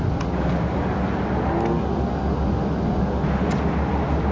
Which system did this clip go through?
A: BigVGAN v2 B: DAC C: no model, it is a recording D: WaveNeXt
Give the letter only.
C